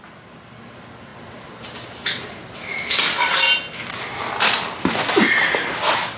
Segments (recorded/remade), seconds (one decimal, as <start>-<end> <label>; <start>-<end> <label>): 0.0-6.2 recorded